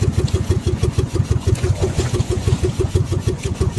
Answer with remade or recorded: remade